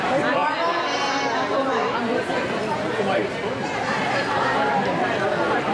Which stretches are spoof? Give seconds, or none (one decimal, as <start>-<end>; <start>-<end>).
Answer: none